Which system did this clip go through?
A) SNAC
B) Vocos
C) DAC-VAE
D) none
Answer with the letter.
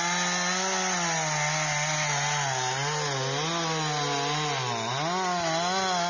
D